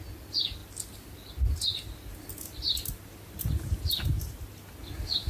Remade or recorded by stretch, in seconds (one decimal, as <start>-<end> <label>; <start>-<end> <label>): 0.0-5.3 recorded